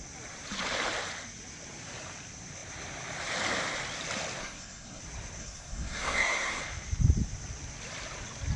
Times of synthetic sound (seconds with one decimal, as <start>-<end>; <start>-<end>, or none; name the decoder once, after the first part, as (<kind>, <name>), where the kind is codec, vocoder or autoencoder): 4.4-5.0 (codec, SNAC); 5.4-6.6